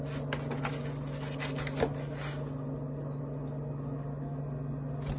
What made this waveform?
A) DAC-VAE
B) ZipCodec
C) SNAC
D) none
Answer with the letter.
D